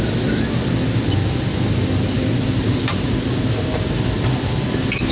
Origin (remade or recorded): recorded